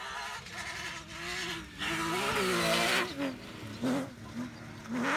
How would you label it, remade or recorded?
recorded